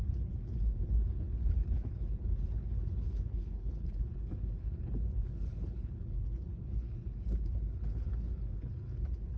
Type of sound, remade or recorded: remade